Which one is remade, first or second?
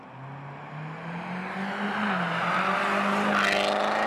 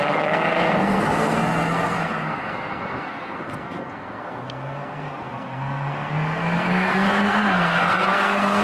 second